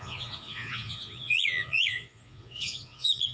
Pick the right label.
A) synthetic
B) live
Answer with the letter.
A